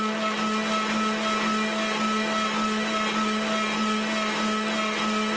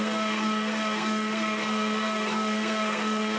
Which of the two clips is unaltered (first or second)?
first